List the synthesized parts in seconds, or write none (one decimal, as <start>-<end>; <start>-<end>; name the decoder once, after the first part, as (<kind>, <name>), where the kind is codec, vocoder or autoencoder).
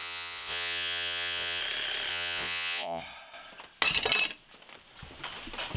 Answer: 0.0-1.6 (vocoder, Vocos); 2.1-3.0